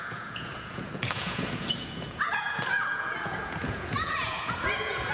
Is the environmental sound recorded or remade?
remade